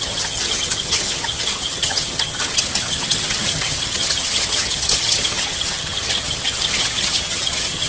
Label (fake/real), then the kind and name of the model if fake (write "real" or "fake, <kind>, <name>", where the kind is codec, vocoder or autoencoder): fake, vocoder, HiFi-GAN